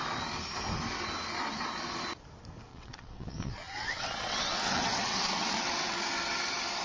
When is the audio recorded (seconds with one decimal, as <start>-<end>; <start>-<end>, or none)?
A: 0.0-2.7; 6.0-6.8